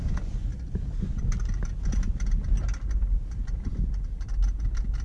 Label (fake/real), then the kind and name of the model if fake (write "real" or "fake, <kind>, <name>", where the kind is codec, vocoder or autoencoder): real